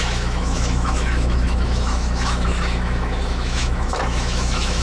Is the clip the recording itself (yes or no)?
no